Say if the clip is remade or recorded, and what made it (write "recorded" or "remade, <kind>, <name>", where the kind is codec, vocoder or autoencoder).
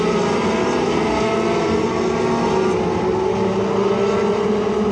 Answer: recorded